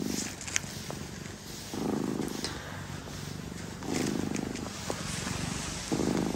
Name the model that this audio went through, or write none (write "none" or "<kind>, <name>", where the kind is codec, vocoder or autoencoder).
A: none